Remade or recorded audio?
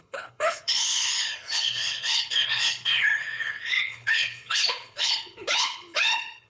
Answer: remade